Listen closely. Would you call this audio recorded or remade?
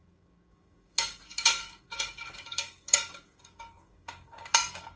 remade